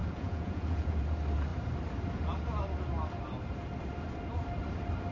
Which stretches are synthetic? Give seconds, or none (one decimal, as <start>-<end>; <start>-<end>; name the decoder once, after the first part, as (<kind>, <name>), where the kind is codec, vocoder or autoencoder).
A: 0.0-1.0 (vocoder, Vocos)